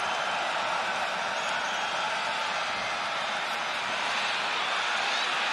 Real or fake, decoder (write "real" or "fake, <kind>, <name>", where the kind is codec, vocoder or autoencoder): real